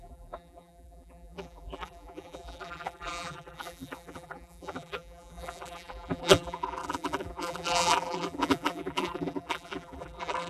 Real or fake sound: fake